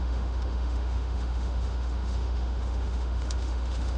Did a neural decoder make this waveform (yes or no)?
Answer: yes